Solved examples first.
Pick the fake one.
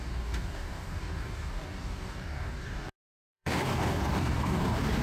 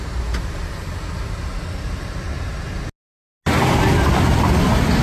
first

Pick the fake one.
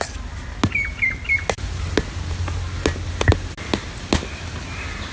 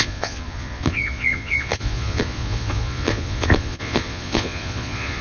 second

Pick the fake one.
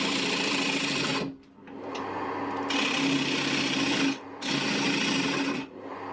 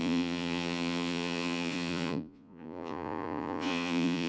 second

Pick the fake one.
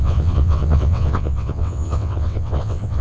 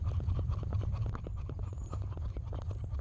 first